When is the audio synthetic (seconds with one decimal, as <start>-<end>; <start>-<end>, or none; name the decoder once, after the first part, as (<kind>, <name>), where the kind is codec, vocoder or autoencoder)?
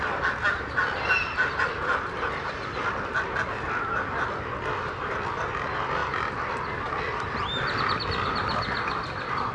none